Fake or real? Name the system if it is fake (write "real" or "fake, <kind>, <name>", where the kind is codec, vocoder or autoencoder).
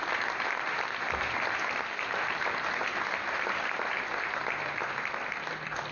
real